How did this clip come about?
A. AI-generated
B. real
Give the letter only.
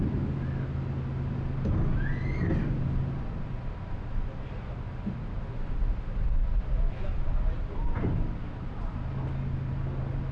B